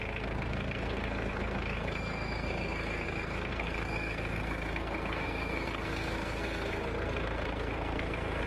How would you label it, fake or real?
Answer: fake